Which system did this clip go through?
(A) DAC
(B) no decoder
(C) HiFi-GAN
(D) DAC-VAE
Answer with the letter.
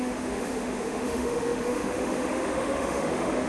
D